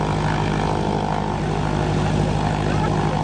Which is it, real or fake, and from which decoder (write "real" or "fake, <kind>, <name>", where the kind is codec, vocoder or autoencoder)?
real